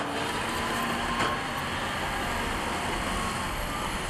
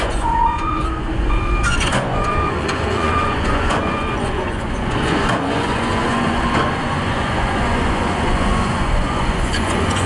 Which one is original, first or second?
first